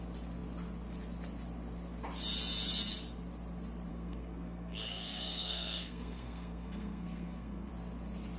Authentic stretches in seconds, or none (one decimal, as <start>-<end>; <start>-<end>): 0.0-3.9; 7.7-8.4